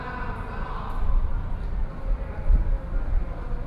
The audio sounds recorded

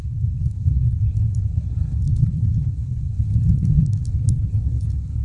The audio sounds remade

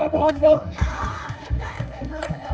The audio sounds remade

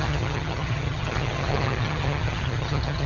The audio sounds remade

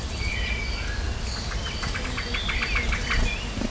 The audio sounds recorded